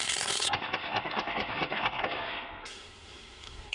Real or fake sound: fake